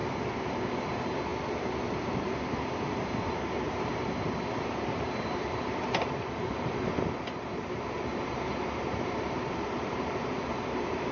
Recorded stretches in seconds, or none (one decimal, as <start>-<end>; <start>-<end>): 0.0-0.7; 1.3-2.0